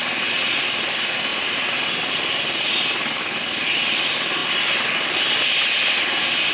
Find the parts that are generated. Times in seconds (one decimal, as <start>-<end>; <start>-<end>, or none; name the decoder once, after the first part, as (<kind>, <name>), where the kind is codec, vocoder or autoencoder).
none